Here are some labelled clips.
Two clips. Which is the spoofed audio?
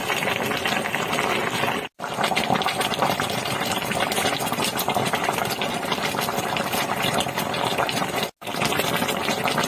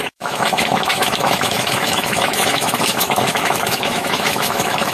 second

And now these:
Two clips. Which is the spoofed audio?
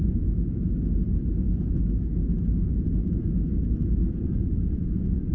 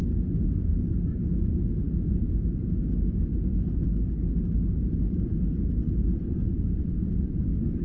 first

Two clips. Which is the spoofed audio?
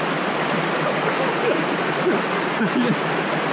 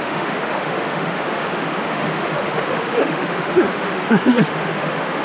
second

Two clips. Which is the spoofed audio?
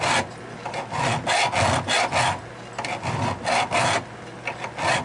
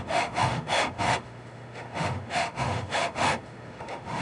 second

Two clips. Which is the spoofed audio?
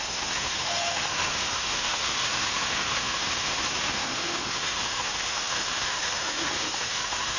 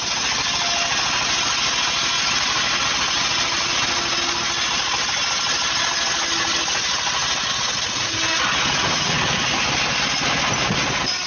first